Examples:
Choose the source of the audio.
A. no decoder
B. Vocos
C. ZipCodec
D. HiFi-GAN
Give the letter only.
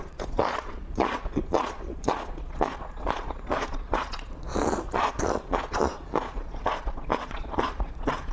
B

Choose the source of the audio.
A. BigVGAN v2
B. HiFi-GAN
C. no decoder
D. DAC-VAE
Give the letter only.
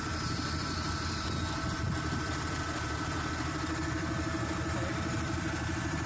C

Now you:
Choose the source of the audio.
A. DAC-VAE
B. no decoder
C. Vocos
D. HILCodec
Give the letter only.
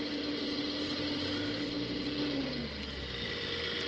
B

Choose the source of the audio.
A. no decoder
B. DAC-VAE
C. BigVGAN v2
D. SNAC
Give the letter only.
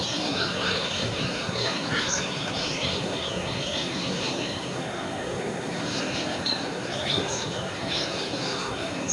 D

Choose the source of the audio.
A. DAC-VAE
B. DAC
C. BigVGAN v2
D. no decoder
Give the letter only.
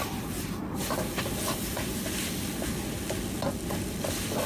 D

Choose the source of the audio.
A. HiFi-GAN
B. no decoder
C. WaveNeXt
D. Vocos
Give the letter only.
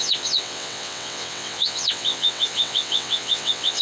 C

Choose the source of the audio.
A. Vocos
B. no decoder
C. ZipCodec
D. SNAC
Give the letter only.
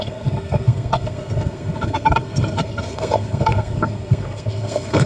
D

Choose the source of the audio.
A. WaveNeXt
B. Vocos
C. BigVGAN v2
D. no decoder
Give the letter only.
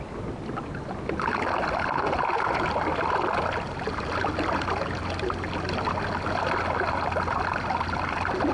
D